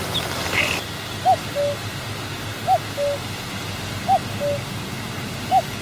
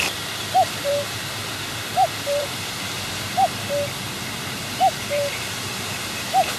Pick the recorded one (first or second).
first